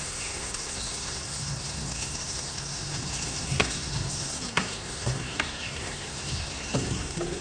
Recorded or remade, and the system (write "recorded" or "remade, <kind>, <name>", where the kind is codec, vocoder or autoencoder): remade, codec, SNAC